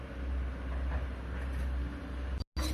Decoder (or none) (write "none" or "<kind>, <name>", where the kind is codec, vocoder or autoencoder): none